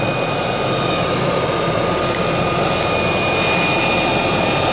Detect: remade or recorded recorded